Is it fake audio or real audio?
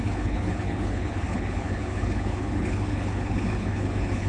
fake